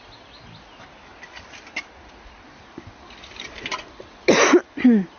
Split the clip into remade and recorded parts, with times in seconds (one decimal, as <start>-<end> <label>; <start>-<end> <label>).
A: 0.0-5.2 recorded